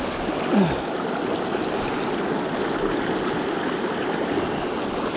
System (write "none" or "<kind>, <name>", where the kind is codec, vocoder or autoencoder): none